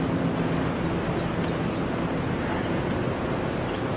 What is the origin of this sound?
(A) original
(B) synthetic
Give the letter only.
A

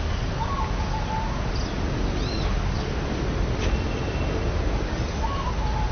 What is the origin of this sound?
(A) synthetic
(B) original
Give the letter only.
B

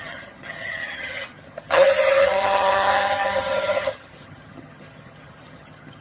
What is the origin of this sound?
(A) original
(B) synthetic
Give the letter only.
B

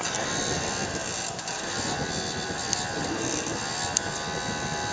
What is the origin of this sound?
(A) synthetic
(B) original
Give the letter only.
B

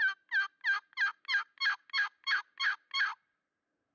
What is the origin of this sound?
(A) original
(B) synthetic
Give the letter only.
A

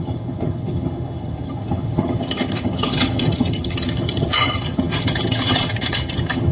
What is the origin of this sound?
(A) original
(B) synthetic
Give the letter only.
B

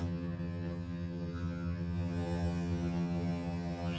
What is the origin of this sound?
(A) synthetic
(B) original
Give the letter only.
A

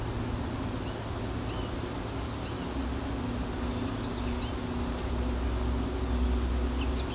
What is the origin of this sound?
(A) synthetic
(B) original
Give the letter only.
B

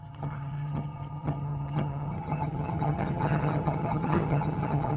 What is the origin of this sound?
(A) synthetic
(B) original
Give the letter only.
A